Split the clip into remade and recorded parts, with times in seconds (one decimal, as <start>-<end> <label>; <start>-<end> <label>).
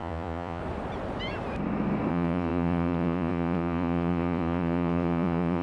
0.0-0.6 remade; 0.6-2.1 recorded; 2.1-5.6 remade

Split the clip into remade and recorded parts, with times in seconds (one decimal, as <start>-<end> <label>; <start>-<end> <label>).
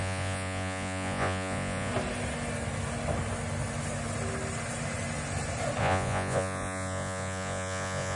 0.0-1.9 remade; 1.9-5.8 recorded; 5.8-8.2 remade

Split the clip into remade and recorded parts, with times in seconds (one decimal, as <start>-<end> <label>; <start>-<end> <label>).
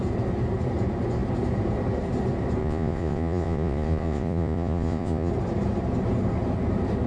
0.0-2.6 recorded; 2.6-5.3 remade; 5.3-7.1 recorded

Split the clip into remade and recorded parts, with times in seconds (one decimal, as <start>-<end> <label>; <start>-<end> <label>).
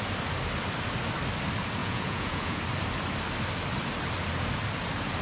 0.0-1.8 recorded; 1.8-2.6 remade; 2.6-5.2 recorded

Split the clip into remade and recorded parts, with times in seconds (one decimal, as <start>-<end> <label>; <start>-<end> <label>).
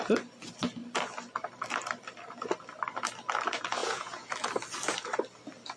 0.0-3.8 recorded; 3.8-4.3 remade; 4.3-5.8 recorded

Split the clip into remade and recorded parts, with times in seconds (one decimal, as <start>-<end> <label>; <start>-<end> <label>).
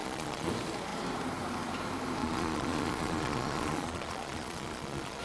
0.0-0.5 remade; 0.5-2.2 recorded; 2.2-5.2 remade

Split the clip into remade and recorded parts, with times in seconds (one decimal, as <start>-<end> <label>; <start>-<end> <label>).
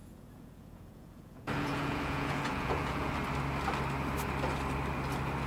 0.0-3.1 remade; 3.1-5.5 recorded